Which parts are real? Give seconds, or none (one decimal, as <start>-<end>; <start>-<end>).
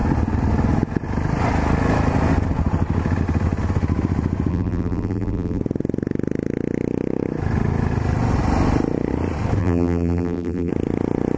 0.0-4.5; 5.6-9.6; 10.7-11.4